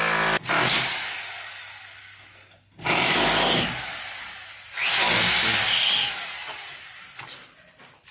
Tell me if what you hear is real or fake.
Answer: real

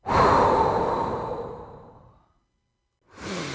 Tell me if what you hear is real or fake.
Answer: real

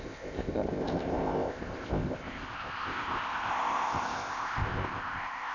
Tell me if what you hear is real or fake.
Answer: fake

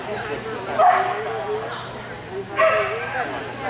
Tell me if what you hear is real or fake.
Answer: real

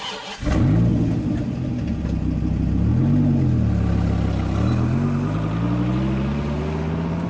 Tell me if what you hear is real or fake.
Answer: real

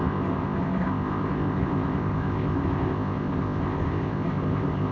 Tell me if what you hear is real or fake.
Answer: fake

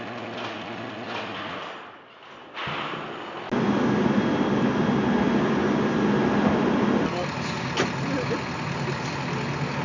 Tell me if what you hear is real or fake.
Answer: real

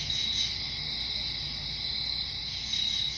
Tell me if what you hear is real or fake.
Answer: real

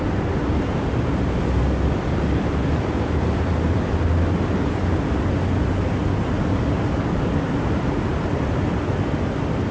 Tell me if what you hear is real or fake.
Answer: real